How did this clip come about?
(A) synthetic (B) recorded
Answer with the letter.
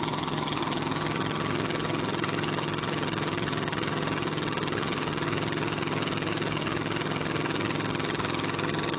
A